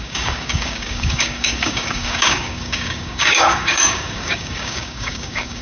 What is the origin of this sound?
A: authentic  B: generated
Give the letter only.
B